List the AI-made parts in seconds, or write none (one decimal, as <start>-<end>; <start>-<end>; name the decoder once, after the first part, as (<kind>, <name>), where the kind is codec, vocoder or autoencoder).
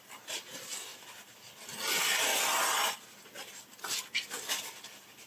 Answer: none